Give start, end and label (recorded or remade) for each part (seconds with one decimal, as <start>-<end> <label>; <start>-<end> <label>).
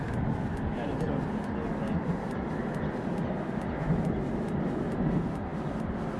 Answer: 0.0-6.2 recorded